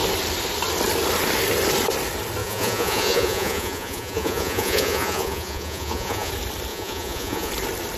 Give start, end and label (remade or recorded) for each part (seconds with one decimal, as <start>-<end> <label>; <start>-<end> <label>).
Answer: 0.0-2.4 recorded; 2.4-6.3 remade; 6.3-6.7 recorded; 6.7-7.5 remade; 7.5-8.0 recorded